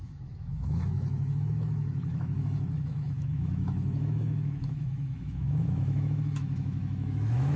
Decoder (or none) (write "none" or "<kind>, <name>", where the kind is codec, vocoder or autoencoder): autoencoder, DAC-VAE